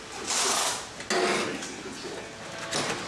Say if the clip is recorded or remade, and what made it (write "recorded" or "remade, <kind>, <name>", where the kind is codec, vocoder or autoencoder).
recorded